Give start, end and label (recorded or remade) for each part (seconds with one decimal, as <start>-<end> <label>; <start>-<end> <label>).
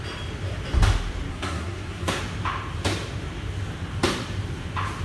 0.0-1.3 recorded; 1.3-2.2 remade; 2.2-5.0 recorded